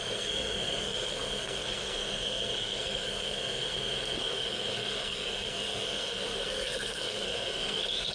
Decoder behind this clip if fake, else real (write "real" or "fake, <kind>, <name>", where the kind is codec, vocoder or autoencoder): fake, codec, SNAC